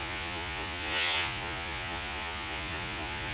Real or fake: fake